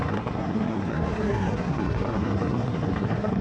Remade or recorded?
remade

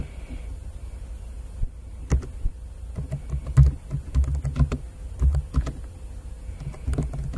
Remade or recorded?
recorded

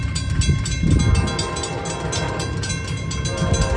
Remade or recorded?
recorded